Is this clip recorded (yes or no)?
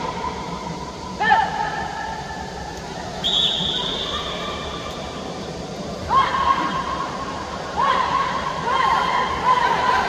no